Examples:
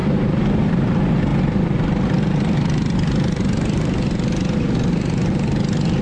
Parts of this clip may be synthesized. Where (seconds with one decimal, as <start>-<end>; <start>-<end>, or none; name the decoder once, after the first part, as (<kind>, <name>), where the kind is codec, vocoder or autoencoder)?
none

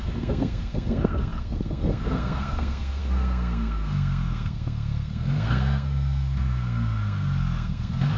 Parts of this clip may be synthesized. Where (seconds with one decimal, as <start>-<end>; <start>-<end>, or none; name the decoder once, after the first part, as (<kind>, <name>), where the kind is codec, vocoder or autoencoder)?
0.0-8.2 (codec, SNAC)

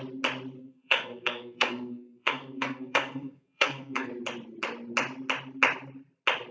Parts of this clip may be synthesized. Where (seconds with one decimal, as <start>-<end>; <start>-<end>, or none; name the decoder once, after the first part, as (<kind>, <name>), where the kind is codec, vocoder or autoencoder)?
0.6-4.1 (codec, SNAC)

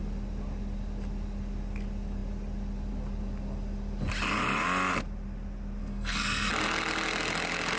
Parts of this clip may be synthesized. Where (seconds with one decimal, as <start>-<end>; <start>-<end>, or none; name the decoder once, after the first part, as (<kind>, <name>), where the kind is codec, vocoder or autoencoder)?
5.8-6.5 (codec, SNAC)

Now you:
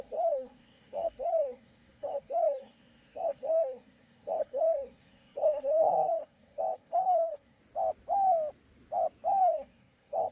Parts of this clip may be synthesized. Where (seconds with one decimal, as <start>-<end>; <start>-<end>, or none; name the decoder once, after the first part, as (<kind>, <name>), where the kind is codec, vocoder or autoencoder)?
0.0-7.6 (codec, SNAC); 9.4-10.3

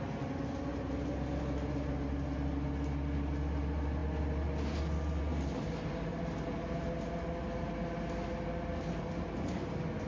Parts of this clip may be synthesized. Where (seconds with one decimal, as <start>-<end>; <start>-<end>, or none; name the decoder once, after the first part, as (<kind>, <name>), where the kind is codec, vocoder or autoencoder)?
none